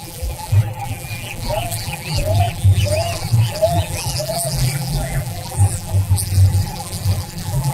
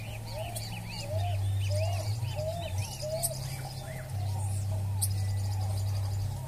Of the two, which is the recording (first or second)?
second